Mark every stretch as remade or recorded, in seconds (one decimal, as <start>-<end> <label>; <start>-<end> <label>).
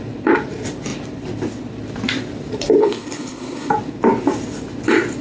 0.0-2.8 recorded; 2.8-3.7 remade; 3.7-5.2 recorded